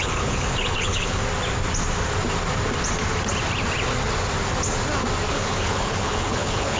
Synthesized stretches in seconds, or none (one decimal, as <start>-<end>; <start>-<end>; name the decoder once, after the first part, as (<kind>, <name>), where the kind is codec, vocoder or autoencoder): 0.0-1.2 (codec, HILCodec); 5.3-6.8